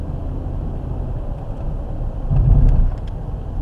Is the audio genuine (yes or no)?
yes